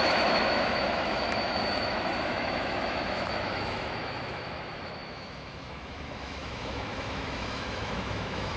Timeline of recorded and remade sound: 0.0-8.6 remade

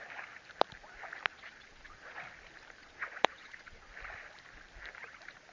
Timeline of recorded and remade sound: 0.0-1.3 recorded; 1.3-2.2 remade; 2.2-2.8 recorded; 2.8-3.9 remade; 3.9-5.5 recorded

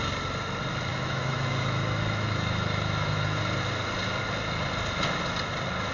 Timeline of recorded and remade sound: 0.0-0.9 recorded; 0.9-3.4 remade; 3.4-5.9 recorded

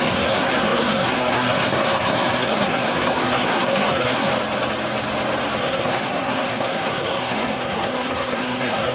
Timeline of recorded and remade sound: 0.0-4.3 remade; 4.3-5.6 recorded; 5.6-8.9 remade